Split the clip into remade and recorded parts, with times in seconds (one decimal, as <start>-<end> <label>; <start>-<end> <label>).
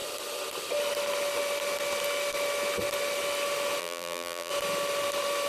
0.0-3.8 recorded; 3.8-4.5 remade; 4.5-5.5 recorded